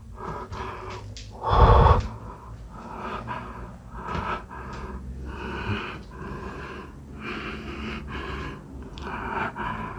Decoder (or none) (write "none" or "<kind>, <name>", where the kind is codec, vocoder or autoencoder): none